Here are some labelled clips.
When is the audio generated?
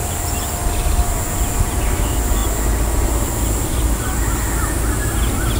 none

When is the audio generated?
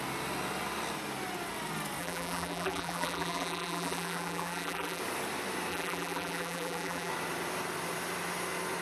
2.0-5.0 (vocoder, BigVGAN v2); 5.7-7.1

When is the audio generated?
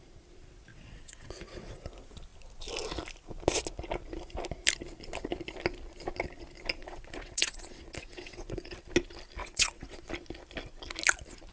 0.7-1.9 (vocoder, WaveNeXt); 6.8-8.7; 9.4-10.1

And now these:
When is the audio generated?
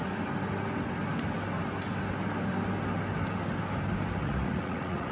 4.2-5.1 (vocoder, Vocos)